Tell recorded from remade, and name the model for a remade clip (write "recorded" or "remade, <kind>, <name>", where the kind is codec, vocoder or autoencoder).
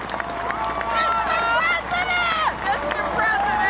recorded